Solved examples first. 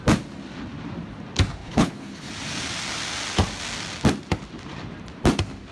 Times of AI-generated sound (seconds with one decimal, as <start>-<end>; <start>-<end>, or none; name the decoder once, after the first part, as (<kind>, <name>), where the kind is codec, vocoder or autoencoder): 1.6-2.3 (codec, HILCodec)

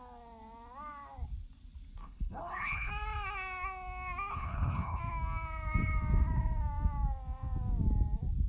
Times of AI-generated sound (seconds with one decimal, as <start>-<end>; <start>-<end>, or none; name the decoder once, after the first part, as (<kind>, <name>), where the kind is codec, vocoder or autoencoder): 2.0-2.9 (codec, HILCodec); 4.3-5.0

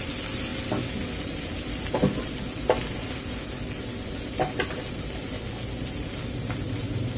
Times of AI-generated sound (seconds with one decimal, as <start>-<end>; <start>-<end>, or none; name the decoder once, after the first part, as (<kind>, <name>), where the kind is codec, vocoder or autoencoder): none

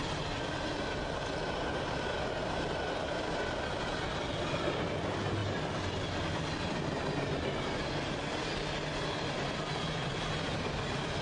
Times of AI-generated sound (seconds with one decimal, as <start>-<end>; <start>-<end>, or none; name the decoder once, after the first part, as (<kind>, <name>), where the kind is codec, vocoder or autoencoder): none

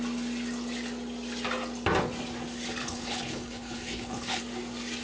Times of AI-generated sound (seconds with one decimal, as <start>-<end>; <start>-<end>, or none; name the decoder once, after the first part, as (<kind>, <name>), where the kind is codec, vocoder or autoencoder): 2.8-4.4 (codec, HILCodec)

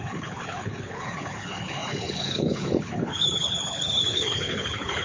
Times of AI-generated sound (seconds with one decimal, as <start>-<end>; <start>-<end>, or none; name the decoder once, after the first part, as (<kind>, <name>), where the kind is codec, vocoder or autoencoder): 0.0-5.0 (codec, HILCodec)

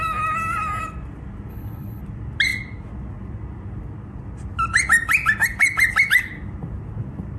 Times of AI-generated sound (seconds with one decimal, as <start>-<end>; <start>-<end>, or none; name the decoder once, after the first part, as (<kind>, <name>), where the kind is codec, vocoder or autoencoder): 1.5-2.0 (codec, HILCodec)